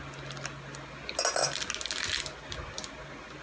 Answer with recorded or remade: recorded